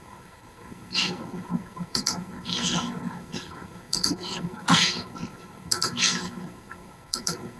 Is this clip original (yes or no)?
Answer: no